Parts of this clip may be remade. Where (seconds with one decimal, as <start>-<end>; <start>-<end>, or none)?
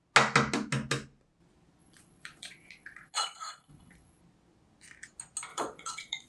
1.8-4.2; 5.5-6.3